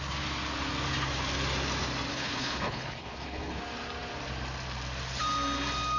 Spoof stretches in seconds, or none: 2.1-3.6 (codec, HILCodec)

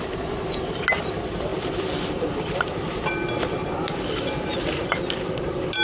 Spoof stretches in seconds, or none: none

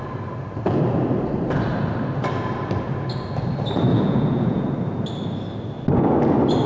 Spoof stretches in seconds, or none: 3.9-4.7 (vocoder, Vocos)

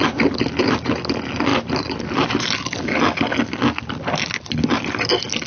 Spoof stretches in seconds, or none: none

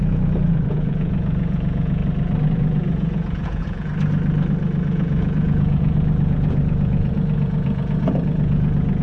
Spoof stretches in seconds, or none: 0.0-2.0 (vocoder, Vocos); 2.5-3.9; 4.8-9.0

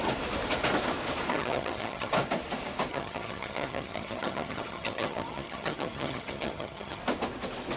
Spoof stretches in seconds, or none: 1.3-2.1 (vocoder, HiFi-GAN); 2.9-7.0

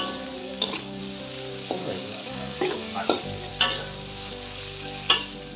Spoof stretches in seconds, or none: 0.4-1.0 (codec, DAC); 1.8-3.0

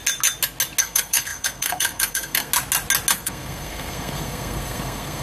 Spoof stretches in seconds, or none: 0.8-2.5 (codec, SNAC); 3.1-5.2